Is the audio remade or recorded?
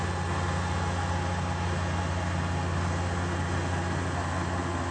recorded